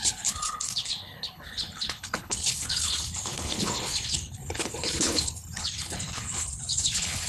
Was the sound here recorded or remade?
remade